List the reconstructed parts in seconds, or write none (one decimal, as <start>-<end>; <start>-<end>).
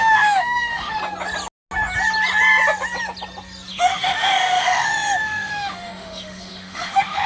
0.0-1.0; 3.7-7.3